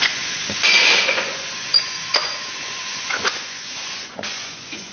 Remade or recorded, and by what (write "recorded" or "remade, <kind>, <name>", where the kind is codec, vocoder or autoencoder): remade, vocoder, Vocos